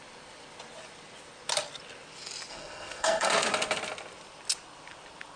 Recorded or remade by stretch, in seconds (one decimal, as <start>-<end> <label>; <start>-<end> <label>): 0.0-2.5 recorded; 2.5-3.3 remade; 3.3-5.4 recorded